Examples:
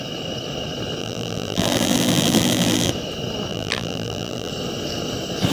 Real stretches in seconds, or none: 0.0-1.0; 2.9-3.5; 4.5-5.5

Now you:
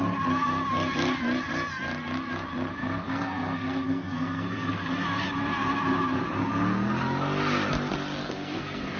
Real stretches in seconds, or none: 0.0-2.8; 4.9-8.2